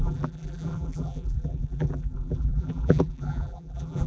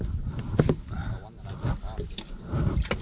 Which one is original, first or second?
second